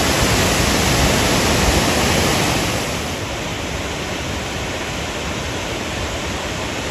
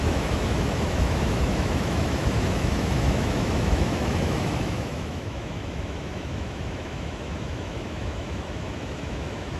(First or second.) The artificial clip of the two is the second